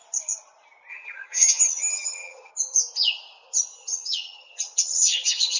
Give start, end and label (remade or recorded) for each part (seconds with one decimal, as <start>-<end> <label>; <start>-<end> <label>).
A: 0.0-0.9 recorded; 0.9-2.5 remade; 2.5-3.7 recorded; 3.7-5.6 remade